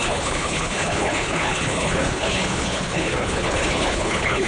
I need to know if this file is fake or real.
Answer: fake